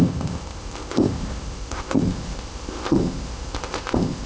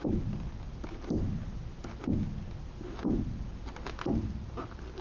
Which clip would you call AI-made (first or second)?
first